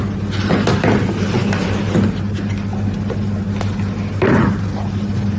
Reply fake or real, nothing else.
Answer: real